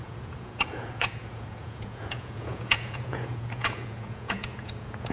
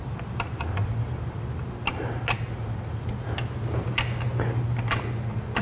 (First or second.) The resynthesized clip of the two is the first